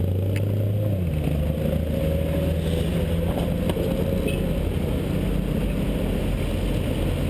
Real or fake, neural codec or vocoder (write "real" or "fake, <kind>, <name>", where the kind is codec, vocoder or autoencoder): real